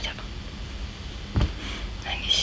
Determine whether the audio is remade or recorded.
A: recorded